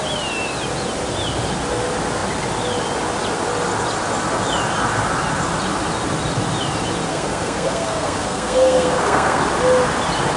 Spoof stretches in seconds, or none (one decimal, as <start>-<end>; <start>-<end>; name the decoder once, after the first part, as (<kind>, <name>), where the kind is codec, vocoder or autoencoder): 7.1-9.4 (codec, SNAC)

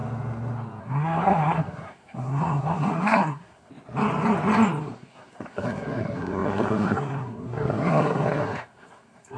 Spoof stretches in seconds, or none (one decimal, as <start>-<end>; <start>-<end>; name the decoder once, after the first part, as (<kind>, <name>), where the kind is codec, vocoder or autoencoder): 0.8-3.7 (codec, SNAC); 4.8-9.4